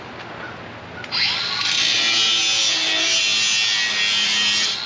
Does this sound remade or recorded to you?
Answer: recorded